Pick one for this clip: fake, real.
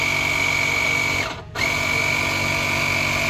real